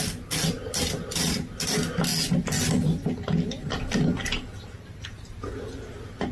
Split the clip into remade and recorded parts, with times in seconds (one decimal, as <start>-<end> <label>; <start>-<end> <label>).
0.0-6.3 recorded